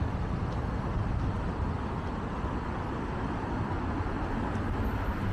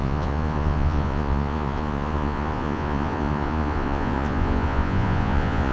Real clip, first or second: first